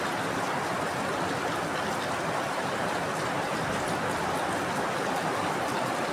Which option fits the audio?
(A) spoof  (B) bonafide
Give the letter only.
B